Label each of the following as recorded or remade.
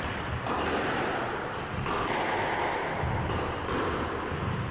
recorded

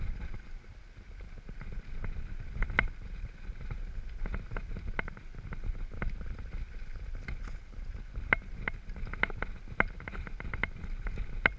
recorded